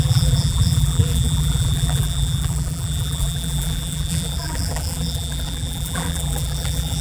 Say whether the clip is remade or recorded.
remade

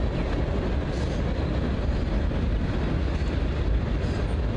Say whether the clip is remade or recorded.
recorded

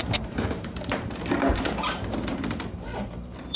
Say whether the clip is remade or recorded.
remade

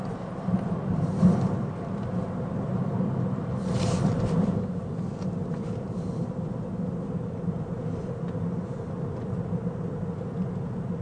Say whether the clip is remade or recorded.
remade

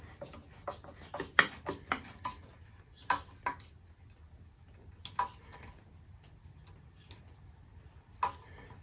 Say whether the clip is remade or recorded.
recorded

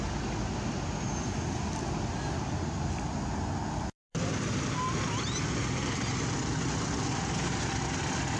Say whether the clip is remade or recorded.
recorded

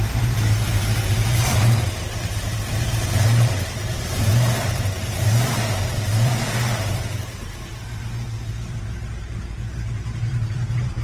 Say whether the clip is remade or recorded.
remade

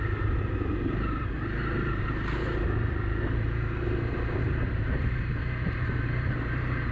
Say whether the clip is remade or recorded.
remade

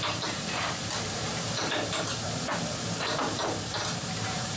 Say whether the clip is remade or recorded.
remade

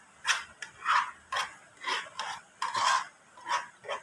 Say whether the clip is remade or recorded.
recorded